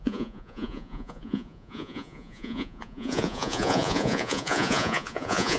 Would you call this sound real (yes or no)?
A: no